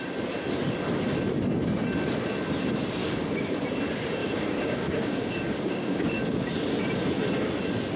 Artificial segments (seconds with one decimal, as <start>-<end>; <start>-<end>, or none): 3.0-3.6; 4.2-6.2